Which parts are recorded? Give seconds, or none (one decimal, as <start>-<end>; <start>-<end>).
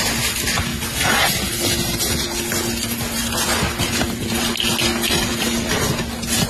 0.0-6.5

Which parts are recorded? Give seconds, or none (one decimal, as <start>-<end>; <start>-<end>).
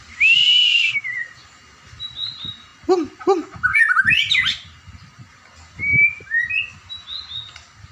0.0-7.9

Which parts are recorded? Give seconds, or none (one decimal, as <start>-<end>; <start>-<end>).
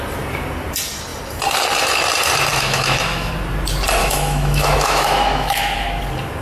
0.0-2.5; 3.3-4.0; 6.0-6.4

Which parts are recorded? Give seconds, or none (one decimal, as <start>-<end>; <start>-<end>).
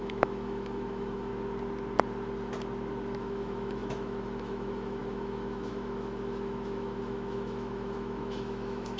1.3-3.2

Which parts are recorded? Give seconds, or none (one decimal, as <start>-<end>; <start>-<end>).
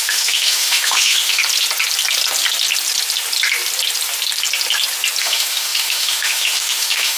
1.4-5.2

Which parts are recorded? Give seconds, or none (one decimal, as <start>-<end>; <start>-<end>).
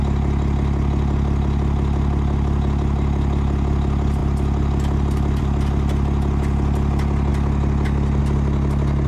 0.0-9.1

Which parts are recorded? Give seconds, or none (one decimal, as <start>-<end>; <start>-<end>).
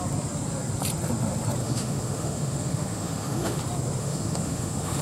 0.0-1.6; 3.6-4.0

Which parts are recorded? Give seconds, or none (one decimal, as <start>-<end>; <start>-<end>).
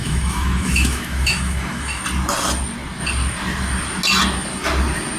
2.0-5.2